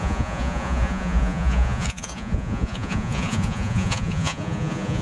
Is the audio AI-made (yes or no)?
yes